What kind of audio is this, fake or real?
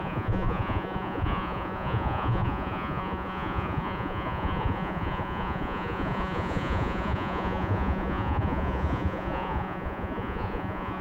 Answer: fake